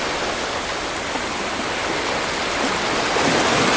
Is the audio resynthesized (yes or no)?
no